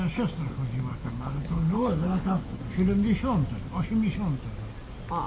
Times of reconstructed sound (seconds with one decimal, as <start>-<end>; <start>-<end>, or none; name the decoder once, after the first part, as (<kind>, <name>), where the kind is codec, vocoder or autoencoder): 0.9-2.6 (codec, HILCodec)